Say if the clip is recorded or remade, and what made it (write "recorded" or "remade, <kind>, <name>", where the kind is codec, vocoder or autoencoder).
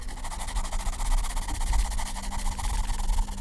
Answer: recorded